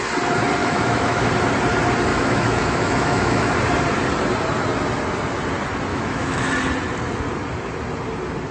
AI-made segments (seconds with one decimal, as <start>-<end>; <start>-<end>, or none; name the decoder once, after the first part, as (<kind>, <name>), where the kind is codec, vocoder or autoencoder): 0.6-1.3 (autoencoder, DAC-VAE); 2.1-3.5; 5.9-6.5